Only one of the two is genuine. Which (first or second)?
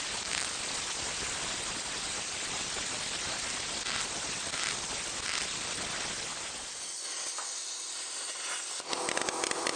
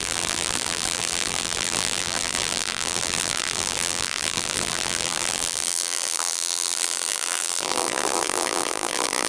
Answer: first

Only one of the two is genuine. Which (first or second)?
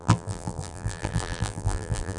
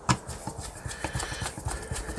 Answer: second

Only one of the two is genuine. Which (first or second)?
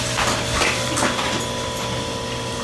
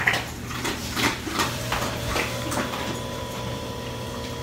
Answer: first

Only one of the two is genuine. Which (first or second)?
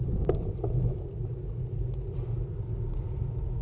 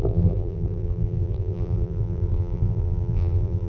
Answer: first